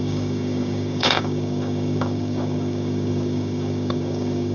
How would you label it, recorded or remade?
remade